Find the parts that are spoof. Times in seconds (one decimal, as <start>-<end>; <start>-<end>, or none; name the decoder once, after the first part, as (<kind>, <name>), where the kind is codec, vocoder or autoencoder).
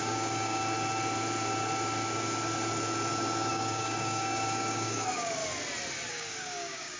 0.0-0.6 (codec, DAC); 3.5-5.4; 6.1-7.0